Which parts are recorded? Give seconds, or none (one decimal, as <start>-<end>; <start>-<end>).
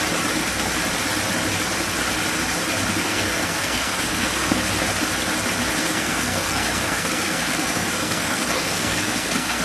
0.0-2.9; 4.7-5.8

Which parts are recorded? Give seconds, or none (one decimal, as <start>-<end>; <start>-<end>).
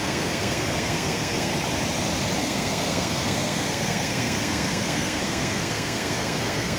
1.5-2.4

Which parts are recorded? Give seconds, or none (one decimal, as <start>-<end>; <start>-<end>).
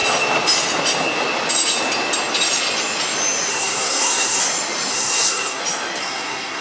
0.0-3.5; 4.4-4.9; 5.6-6.0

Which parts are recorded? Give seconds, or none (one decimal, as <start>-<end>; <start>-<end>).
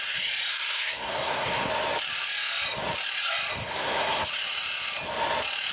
0.0-0.5; 1.7-3.6; 4.3-5.7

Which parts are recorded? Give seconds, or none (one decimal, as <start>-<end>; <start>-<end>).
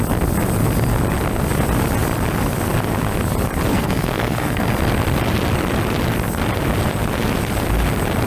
0.0-3.7; 4.6-8.3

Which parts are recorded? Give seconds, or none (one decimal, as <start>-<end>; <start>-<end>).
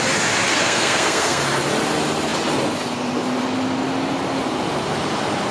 0.0-0.5; 1.4-5.5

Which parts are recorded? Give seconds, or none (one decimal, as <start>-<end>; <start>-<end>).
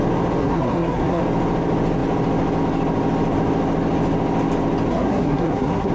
0.0-0.4; 1.2-4.9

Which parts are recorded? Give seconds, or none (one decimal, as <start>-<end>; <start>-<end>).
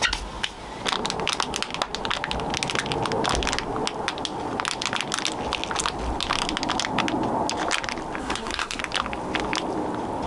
0.0-8.2; 8.8-10.3